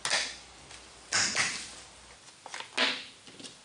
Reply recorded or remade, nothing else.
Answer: recorded